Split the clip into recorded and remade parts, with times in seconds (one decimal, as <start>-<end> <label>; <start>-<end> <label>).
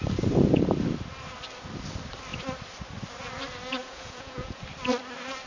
0.0-3.8 recorded; 3.8-4.6 remade; 4.6-5.5 recorded